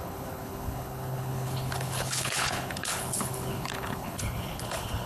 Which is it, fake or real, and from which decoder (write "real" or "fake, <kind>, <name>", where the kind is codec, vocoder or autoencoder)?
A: fake, codec, HILCodec